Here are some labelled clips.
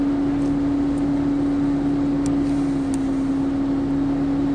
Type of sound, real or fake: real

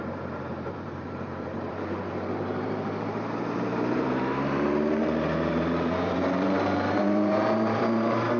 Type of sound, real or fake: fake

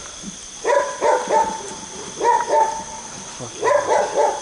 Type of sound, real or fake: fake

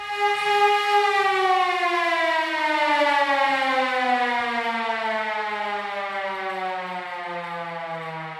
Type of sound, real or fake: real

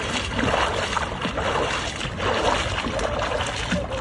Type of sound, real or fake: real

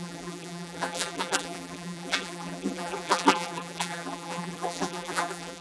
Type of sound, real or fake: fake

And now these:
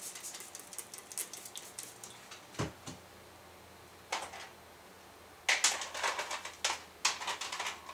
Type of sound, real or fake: real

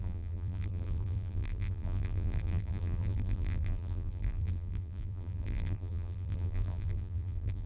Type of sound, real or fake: fake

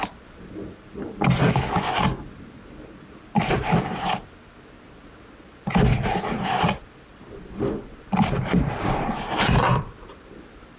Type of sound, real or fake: fake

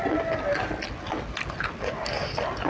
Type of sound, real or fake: real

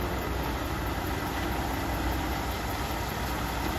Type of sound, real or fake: real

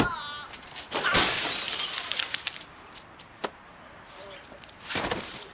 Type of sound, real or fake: fake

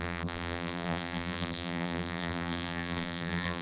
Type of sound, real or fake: fake